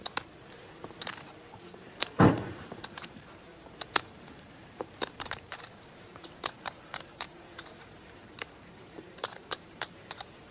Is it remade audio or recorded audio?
remade